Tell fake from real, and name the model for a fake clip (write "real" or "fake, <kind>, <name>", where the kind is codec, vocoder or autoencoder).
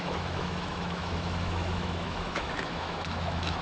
fake, autoencoder, DAC-VAE